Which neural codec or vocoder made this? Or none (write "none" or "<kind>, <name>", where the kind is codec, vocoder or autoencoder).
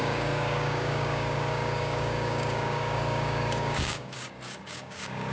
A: codec, DAC